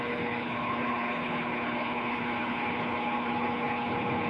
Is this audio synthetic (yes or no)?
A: yes